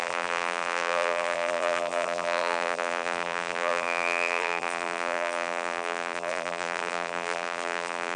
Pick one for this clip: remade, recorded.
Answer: remade